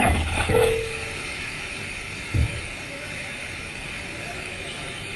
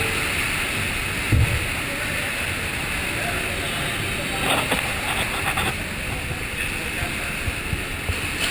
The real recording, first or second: second